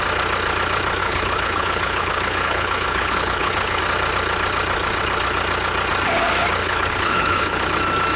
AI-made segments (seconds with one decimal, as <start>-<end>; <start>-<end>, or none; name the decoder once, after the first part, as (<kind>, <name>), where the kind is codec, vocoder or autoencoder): 1.0-3.8 (codec, HILCodec); 6.6-7.6